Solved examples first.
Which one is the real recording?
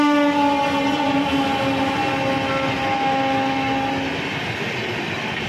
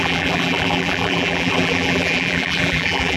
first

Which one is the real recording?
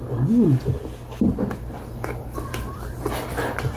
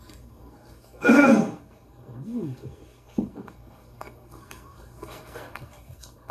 first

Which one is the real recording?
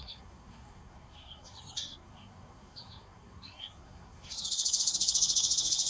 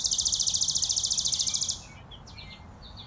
second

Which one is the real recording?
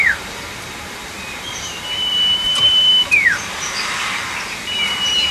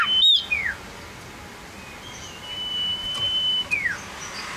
second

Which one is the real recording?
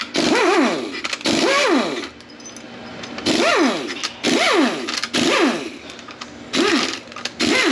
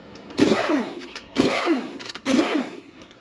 first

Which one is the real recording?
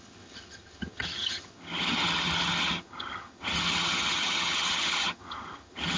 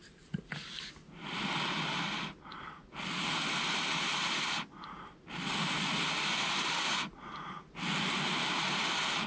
second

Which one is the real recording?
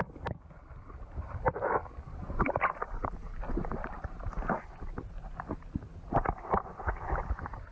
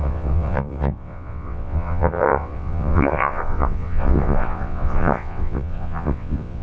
first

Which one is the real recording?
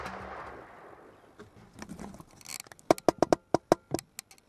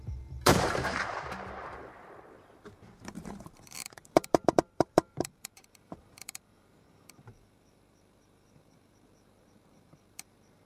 first